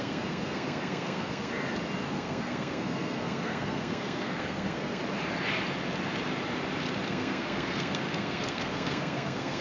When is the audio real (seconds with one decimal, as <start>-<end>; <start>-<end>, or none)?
1.5-2.1; 5.0-7.1